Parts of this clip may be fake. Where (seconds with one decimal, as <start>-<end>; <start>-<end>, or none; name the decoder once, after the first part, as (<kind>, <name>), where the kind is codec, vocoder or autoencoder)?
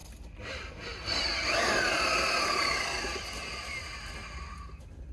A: 0.0-0.7 (vocoder, BigVGAN v2)